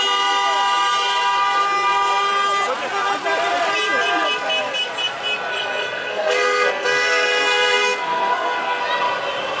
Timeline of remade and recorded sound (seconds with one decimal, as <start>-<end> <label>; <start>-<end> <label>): 0.0-5.5 recorded; 5.5-8.8 remade; 8.8-9.6 recorded